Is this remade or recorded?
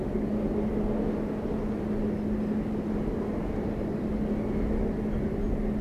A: recorded